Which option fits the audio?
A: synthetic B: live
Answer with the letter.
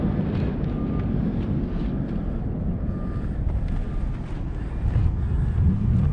B